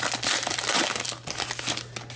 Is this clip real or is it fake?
real